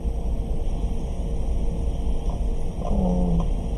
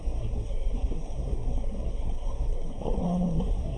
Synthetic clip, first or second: second